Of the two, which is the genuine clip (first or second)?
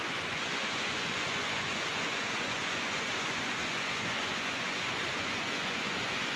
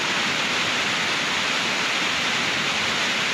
second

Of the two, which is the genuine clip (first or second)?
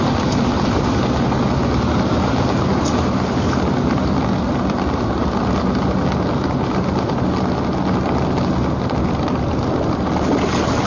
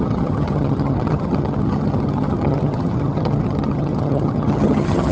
first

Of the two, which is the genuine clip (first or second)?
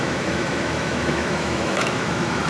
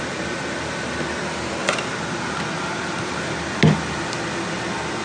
second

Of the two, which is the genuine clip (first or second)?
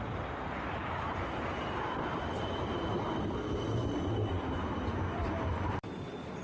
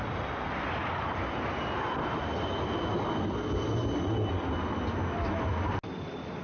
second